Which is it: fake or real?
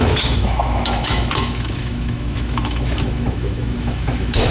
fake